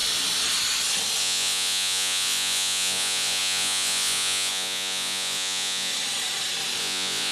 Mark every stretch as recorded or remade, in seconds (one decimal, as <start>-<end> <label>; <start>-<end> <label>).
0.0-1.2 recorded; 1.2-5.9 remade; 5.9-6.8 recorded; 6.8-7.3 remade